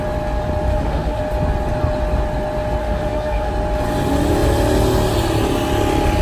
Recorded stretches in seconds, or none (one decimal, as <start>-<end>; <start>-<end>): 0.0-0.7; 1.2-2.8; 3.5-6.2